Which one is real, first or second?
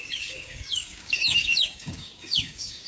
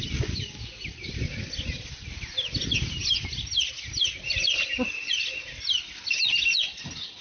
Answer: second